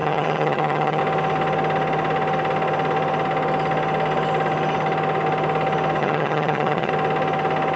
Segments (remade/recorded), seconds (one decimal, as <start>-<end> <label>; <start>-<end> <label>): 0.0-1.0 remade; 1.0-6.0 recorded; 6.0-6.9 remade; 6.9-7.8 recorded